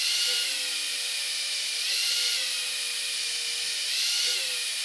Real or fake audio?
fake